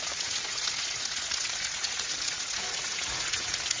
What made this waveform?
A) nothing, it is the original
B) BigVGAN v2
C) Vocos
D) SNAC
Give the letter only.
C